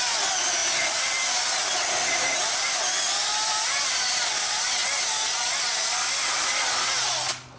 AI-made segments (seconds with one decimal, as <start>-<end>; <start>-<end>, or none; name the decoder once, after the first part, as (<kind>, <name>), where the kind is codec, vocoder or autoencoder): none